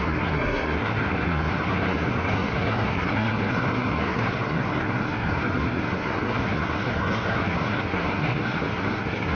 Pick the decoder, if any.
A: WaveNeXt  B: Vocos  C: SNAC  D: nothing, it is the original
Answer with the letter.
C